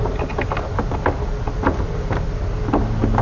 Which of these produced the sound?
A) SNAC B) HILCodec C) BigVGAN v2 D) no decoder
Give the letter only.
D